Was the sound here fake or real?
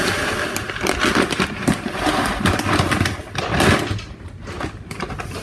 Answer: real